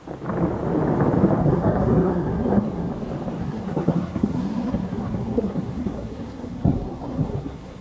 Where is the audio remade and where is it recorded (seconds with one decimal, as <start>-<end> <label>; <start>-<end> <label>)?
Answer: 0.0-1.4 recorded; 1.4-2.9 remade; 2.9-3.4 recorded; 3.4-7.8 remade